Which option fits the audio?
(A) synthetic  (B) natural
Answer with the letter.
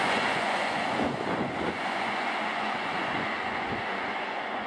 A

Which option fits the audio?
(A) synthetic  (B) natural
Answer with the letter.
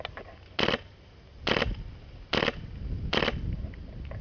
B